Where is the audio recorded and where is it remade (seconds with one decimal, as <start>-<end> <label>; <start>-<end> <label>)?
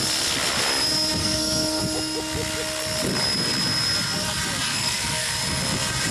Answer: 0.0-1.2 recorded; 1.2-1.8 remade; 1.8-4.7 recorded; 4.7-5.3 remade; 5.3-6.1 recorded